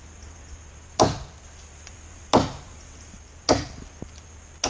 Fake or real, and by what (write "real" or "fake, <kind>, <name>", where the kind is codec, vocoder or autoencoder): real